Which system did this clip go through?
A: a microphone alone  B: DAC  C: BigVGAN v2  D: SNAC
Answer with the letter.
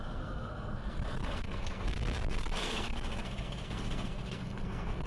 D